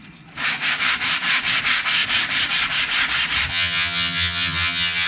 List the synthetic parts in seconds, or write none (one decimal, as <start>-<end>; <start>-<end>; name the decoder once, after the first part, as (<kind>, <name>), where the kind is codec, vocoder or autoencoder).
3.5-5.1 (vocoder, HiFi-GAN)